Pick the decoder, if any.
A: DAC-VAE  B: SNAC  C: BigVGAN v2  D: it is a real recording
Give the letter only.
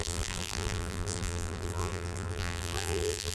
C